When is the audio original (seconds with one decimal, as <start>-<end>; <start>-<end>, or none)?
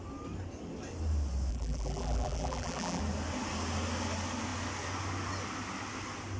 0.0-1.5; 3.0-6.4